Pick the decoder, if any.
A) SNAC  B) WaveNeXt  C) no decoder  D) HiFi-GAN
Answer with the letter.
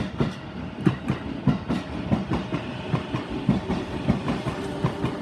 C